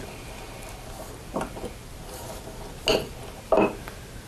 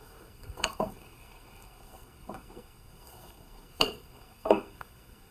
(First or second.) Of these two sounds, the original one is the first